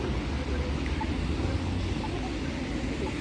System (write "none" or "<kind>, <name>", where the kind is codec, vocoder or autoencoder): none